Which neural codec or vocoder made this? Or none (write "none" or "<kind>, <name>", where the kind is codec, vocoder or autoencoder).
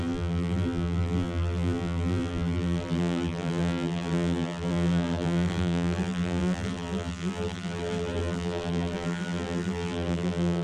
vocoder, BigVGAN v2